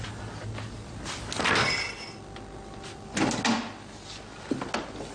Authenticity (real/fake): real